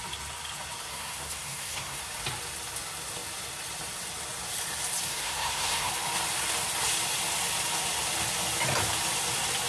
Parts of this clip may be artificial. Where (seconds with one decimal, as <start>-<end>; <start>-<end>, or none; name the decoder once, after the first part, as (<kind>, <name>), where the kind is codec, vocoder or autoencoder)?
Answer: 0.9-2.0 (codec, SNAC); 5.1-5.9